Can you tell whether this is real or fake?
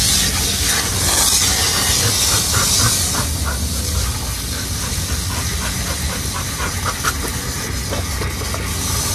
real